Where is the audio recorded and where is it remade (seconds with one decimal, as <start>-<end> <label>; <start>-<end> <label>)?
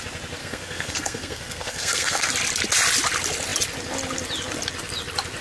0.0-0.4 recorded; 0.4-2.3 remade; 2.3-5.4 recorded